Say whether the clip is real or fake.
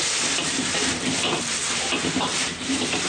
real